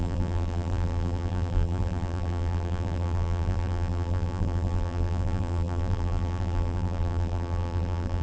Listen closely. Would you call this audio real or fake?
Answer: fake